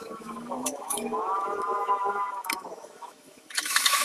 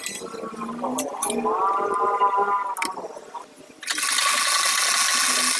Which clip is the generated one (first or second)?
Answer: first